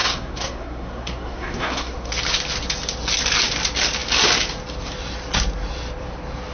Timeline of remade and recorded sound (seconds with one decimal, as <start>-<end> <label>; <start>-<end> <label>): 0.0-2.1 remade; 2.1-6.5 recorded